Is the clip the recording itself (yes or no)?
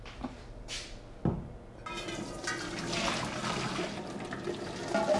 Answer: yes